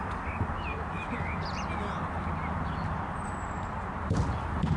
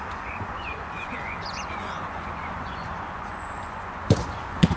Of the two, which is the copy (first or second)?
second